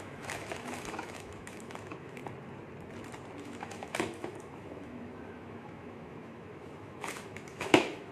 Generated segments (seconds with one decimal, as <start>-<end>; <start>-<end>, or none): 0.0-2.2; 3.4-8.1